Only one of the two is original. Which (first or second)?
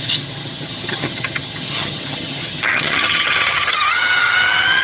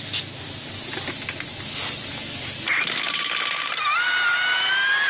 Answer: second